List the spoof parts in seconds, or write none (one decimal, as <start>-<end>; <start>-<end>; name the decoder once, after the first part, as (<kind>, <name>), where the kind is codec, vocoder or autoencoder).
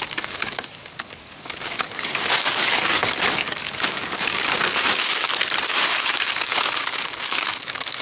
0.0-5.3 (codec, DAC); 5.8-8.0